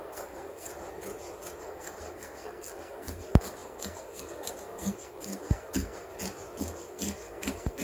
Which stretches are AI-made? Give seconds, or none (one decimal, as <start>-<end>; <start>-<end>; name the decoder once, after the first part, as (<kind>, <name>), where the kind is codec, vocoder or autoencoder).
0.0-0.7 (codec, SNAC); 1.6-6.1; 6.6-7.8